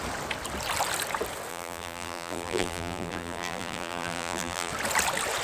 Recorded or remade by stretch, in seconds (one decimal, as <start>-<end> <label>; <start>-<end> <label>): 0.0-1.5 recorded; 1.5-4.7 remade; 4.7-5.4 recorded